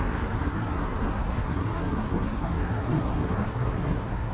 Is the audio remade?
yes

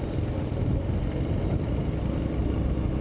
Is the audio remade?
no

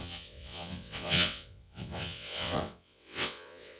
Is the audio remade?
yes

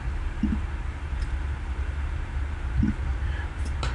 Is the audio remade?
no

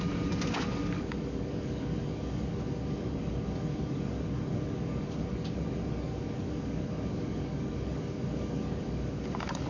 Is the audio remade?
yes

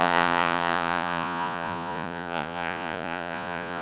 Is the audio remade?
yes